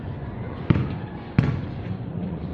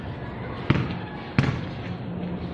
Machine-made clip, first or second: first